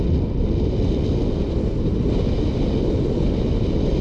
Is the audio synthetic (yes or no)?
no